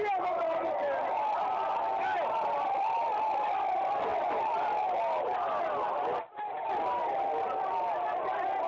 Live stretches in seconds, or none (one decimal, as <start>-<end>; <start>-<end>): 0.0-8.7